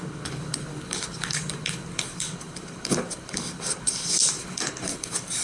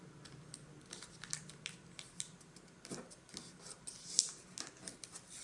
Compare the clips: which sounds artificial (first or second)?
first